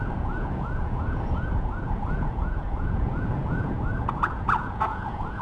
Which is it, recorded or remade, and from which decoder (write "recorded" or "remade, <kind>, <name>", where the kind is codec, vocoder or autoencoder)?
remade, vocoder, Vocos